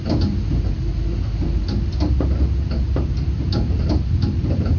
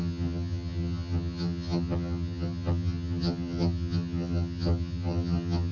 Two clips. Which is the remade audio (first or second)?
second